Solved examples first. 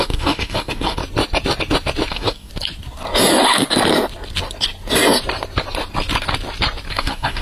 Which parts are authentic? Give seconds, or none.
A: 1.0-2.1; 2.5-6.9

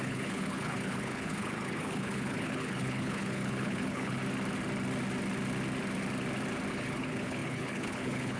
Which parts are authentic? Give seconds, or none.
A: 4.2-6.7

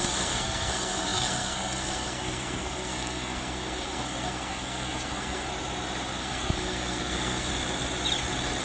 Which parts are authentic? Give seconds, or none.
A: 5.5-6.2; 7.5-8.6

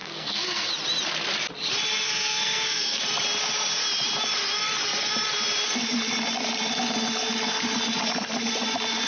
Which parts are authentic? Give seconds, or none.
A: 0.7-1.9; 3.0-9.1

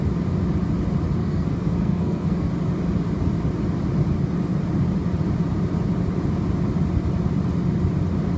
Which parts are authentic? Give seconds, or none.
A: 0.0-1.2; 2.5-8.4

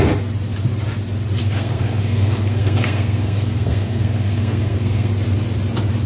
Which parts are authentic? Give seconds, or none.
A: 0.0-1.4; 5.1-6.1

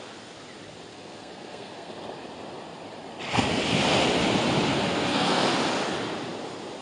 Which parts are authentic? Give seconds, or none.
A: 0.0-0.9; 1.9-4.7; 5.4-6.8

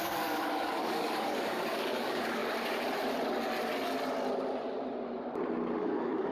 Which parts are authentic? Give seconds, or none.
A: 2.4-5.8